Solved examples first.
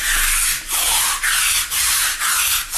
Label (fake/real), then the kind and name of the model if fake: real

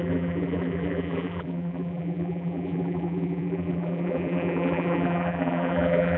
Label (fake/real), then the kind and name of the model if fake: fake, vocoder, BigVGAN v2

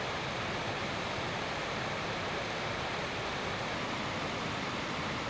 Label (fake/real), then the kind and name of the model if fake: fake, vocoder, BigVGAN v2